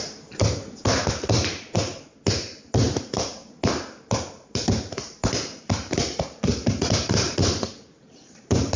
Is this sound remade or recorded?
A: remade